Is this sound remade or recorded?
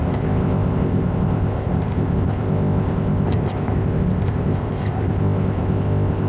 remade